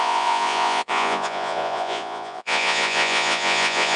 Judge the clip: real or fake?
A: fake